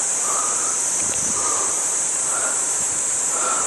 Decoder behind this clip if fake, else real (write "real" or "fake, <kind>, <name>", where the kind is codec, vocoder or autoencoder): fake, vocoder, BigVGAN v2